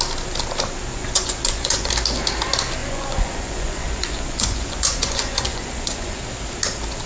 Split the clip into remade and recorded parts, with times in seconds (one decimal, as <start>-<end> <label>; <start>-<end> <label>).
0.0-0.9 recorded; 0.9-1.9 remade; 1.9-2.8 recorded; 2.8-6.2 remade; 6.2-7.1 recorded